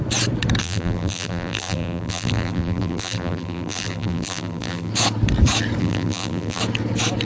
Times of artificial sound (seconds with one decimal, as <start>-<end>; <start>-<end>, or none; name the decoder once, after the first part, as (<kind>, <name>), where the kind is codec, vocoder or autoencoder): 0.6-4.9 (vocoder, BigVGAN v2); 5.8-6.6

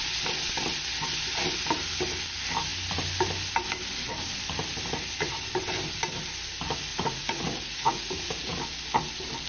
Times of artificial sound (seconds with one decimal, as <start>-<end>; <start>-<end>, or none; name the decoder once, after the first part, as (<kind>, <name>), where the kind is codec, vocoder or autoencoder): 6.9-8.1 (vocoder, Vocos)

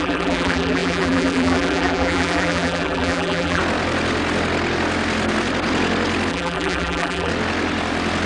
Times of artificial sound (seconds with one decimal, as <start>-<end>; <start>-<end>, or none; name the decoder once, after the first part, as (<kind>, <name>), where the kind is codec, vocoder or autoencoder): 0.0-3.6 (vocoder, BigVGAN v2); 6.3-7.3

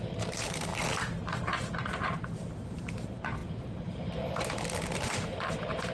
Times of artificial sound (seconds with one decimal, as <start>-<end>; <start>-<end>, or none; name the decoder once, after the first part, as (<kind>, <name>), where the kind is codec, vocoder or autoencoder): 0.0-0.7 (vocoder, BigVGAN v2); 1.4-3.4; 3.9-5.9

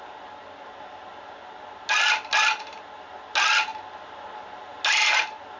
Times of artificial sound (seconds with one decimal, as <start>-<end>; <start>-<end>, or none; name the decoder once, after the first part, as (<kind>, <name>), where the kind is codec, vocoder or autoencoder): none